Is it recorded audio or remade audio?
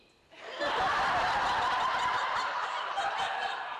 recorded